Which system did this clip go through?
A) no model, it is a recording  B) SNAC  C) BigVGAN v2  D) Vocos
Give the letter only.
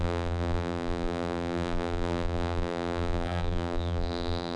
C